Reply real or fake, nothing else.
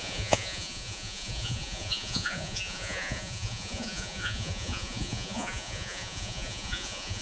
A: fake